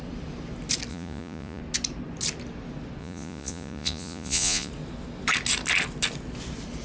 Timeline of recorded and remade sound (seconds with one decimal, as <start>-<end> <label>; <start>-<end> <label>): 0.0-0.9 recorded; 0.9-1.6 remade; 1.6-3.0 recorded; 3.0-4.7 remade; 4.7-6.8 recorded